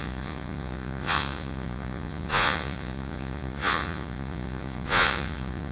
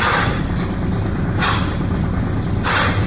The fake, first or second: first